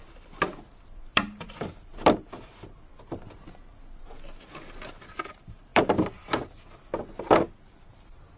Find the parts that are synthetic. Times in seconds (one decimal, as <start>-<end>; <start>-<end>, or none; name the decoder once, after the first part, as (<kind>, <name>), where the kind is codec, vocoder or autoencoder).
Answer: 0.0-4.0 (vocoder, BigVGAN v2); 5.7-6.5